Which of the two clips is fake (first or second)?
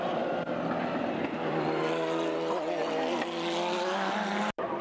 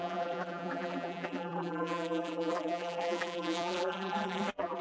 second